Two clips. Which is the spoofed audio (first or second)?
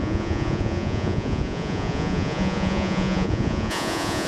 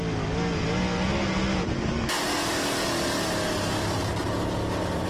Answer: first